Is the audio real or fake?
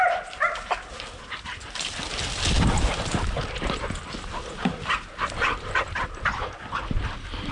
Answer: real